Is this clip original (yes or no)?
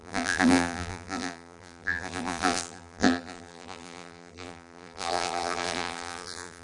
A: no